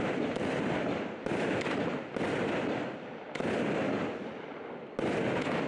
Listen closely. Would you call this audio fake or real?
real